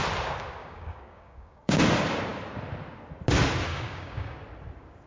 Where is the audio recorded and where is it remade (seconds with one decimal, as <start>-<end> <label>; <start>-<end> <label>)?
0.0-0.6 recorded; 0.6-1.8 remade; 1.8-3.7 recorded; 3.7-4.4 remade; 4.4-5.1 recorded